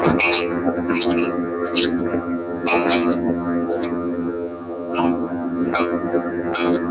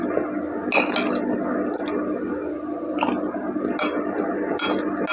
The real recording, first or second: second